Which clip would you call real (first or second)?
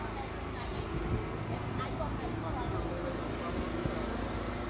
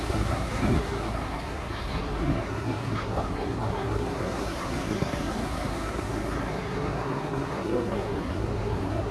first